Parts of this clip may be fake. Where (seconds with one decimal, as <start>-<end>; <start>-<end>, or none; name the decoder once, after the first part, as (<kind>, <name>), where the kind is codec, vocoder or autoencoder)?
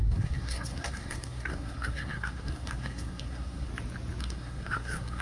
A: 0.0-3.7 (codec, SNAC); 4.2-5.2